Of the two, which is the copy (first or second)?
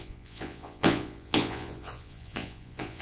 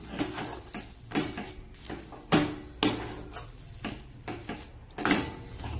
first